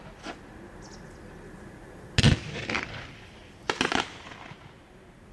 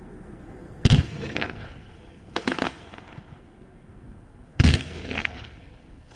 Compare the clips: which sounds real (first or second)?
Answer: first